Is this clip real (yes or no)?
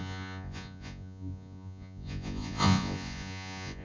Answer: no